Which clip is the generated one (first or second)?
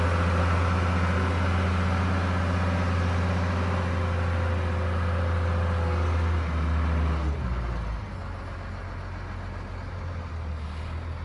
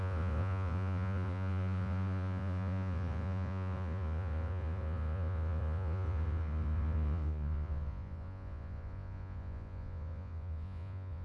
second